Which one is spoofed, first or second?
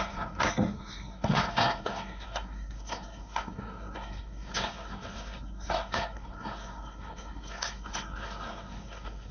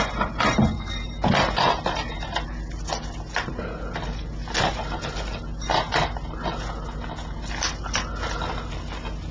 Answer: first